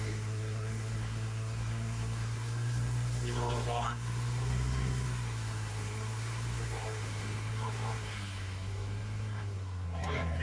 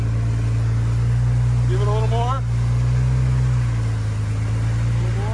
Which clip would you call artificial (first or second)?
first